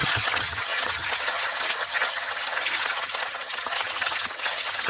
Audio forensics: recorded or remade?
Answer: remade